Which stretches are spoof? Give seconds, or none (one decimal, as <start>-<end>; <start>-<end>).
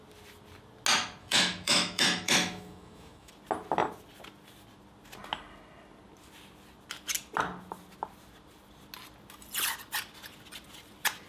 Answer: 1.2-3.3